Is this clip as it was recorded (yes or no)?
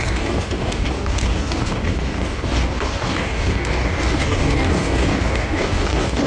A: no